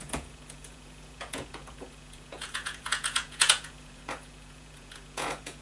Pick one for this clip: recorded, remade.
remade